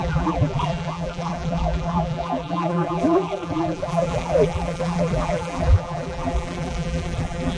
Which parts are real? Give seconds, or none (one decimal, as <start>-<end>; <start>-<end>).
none